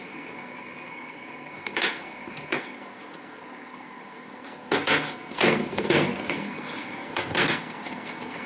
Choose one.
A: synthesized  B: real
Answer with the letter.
A